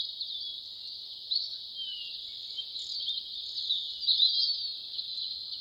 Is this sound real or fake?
real